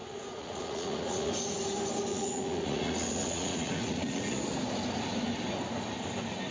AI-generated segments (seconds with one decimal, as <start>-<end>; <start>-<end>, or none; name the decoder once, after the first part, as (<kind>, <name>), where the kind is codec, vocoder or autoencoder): 0.0-1.3 (vocoder, Vocos); 2.1-4.4